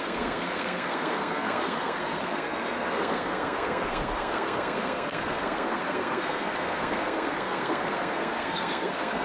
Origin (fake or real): fake